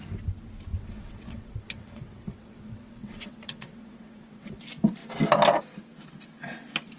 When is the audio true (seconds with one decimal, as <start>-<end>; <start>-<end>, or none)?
0.0-0.7; 4.6-7.0